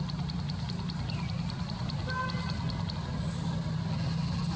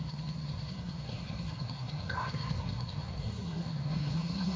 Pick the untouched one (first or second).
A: first